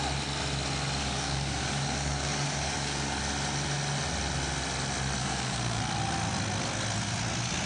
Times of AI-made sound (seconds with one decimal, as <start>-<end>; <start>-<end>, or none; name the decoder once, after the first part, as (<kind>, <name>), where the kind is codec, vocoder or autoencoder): 1.0-3.2 (codec, DAC); 5.2-5.8